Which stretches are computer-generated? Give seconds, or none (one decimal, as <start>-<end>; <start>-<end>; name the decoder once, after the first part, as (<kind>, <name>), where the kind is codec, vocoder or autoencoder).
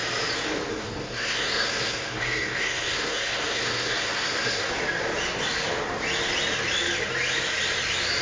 0.7-4.7 (codec, SNAC)